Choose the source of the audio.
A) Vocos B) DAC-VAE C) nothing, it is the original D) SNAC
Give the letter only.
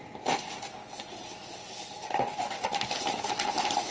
C